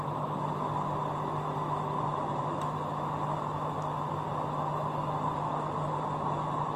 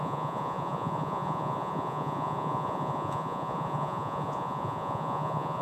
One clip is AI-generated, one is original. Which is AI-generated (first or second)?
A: second